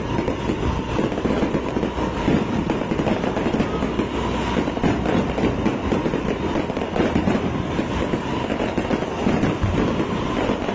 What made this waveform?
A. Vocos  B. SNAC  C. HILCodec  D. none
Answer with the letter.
D